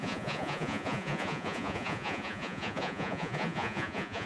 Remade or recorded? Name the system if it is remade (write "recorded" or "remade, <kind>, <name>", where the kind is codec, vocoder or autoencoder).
remade, vocoder, Vocos